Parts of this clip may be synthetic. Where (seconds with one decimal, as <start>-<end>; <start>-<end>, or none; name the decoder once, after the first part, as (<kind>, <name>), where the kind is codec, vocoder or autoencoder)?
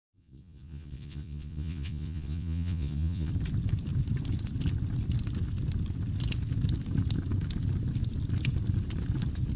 0.0-3.3 (vocoder, Vocos)